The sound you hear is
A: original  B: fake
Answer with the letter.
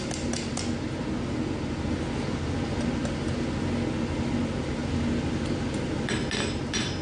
A